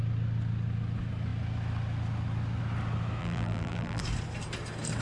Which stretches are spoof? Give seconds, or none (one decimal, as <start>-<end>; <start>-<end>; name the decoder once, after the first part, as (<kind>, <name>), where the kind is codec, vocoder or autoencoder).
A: 3.2-4.0 (vocoder, BigVGAN v2)